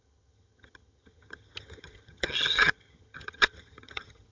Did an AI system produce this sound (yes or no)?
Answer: yes